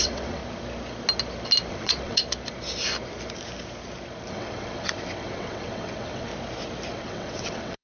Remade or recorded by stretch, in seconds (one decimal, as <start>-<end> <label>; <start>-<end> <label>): 0.0-0.4 remade; 0.4-1.7 recorded; 1.7-2.2 remade; 2.2-4.3 recorded; 4.3-6.3 remade; 6.3-6.9 recorded; 6.9-7.8 remade